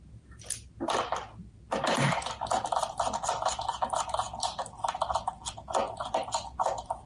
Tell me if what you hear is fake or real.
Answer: real